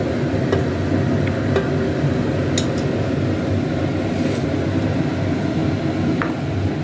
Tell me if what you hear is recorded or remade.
recorded